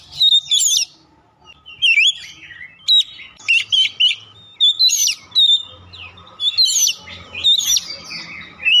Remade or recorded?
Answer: recorded